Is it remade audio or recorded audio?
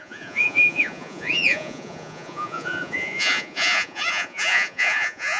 remade